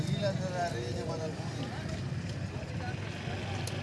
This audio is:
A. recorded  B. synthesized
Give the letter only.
A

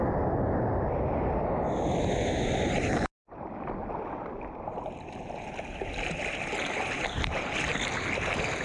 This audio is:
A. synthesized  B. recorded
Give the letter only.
B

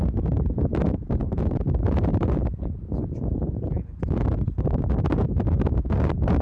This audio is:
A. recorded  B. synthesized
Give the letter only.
B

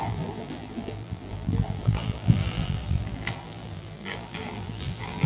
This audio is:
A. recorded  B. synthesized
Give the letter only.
B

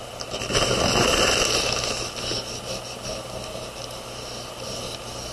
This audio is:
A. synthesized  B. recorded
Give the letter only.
A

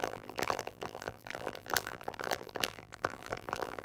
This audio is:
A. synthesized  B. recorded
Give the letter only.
A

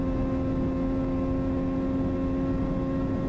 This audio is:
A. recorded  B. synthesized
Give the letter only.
A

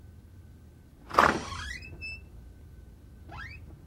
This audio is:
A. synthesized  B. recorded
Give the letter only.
A